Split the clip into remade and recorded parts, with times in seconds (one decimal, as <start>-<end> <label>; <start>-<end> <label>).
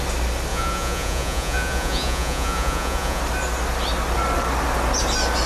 0.0-0.5 recorded; 0.5-3.2 remade; 3.2-5.5 recorded